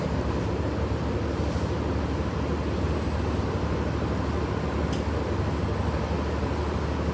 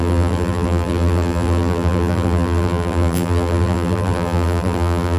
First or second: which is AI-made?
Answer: second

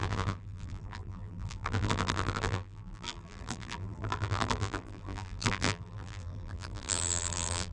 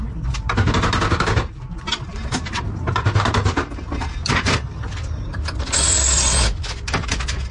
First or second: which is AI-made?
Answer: first